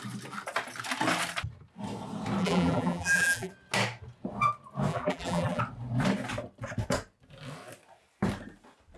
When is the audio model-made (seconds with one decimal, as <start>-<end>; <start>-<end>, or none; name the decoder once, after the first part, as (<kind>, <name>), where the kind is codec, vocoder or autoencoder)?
2.4-3.5 (vocoder, BigVGAN v2); 4.9-5.6